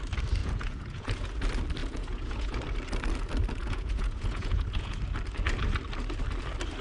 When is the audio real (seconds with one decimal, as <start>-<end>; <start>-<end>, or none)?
0.0-0.4; 1.4-1.8; 2.6-3.6; 5.0-6.8